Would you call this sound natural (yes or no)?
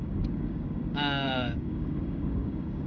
no